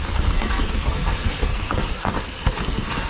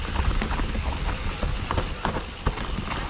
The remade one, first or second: first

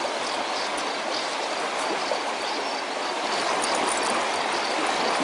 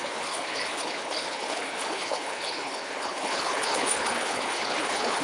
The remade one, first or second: second